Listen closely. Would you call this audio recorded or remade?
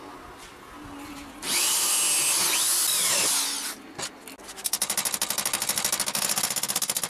recorded